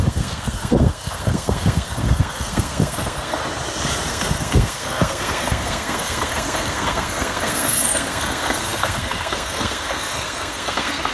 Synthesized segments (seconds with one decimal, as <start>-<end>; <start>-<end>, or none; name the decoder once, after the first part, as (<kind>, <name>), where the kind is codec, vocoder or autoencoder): 0.0-3.4 (codec, SNAC); 4.1-11.1